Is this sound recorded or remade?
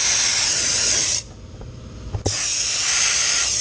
recorded